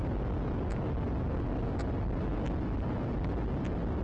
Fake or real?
real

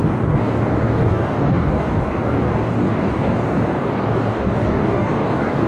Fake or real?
fake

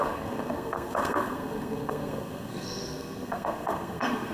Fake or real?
fake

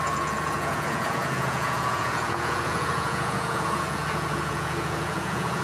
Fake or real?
fake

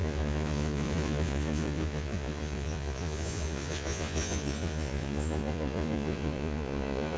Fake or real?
fake